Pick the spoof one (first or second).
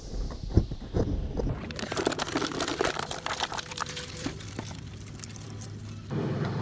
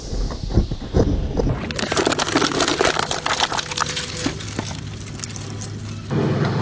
first